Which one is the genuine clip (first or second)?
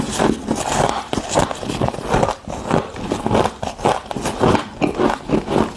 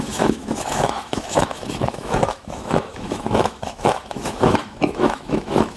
first